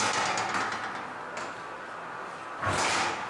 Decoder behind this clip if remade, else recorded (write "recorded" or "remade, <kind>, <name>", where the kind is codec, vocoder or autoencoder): recorded